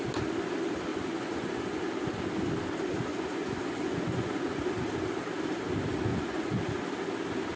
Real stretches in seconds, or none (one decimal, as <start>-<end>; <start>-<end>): 0.0-0.9; 1.8-3.1; 4.6-6.1; 6.6-7.6